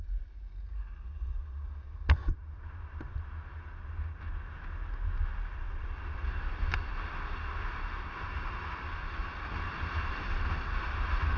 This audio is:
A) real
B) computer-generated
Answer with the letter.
A